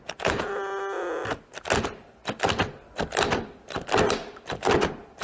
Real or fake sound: real